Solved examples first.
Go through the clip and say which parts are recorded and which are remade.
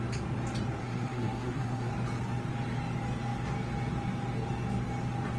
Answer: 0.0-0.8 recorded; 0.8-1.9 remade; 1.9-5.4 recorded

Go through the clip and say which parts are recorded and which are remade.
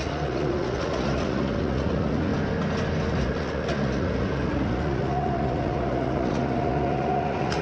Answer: 0.0-2.3 remade; 2.3-3.1 recorded; 3.1-7.6 remade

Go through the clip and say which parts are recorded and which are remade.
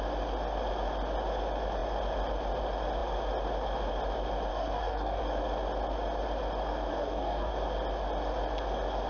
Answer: 0.0-4.5 recorded; 4.5-5.2 remade; 5.2-6.9 recorded; 6.9-7.5 remade; 7.5-9.1 recorded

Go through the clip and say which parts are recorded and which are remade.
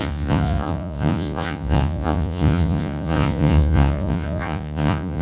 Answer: 0.0-5.2 remade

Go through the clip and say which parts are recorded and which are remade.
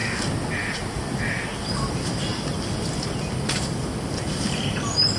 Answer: 0.0-1.7 recorded; 1.7-2.3 remade; 2.3-4.7 recorded; 4.7-5.2 remade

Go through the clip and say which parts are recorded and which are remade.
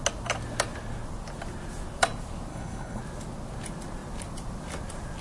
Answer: 0.0-2.5 recorded; 2.5-3.0 remade; 3.0-5.2 recorded